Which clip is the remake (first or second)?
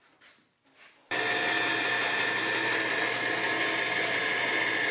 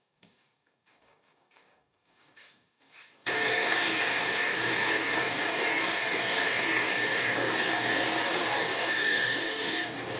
second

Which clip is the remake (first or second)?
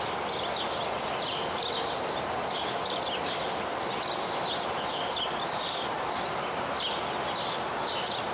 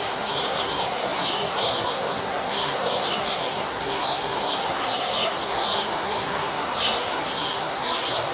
second